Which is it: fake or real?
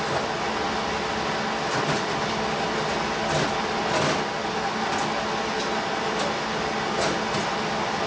real